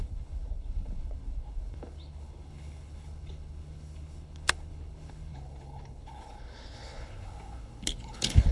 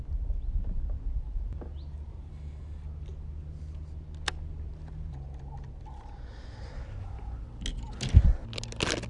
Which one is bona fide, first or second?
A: second